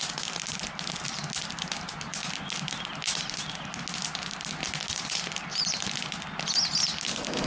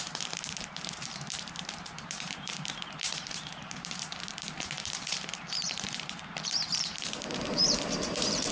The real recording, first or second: first